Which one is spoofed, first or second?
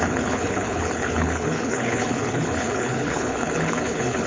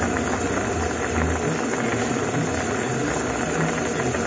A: first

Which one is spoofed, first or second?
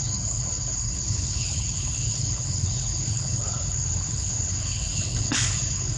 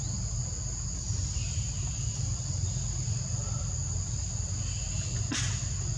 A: first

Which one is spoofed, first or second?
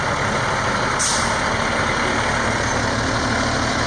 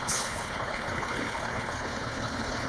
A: second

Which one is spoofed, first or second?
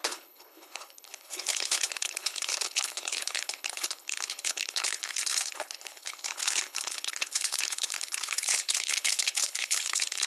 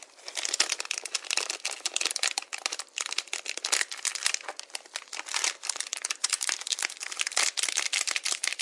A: first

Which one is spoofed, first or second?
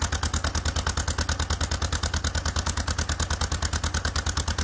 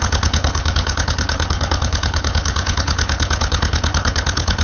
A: second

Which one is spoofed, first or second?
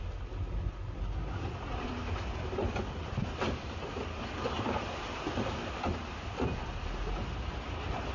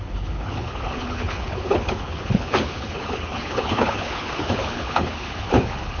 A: second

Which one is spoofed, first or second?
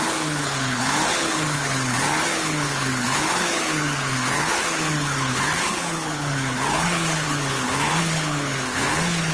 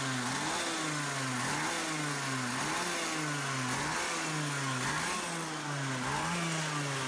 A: first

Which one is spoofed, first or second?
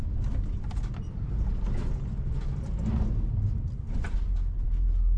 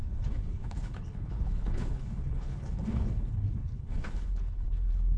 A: second